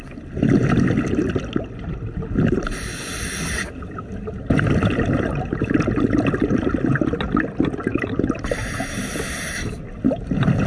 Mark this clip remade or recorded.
recorded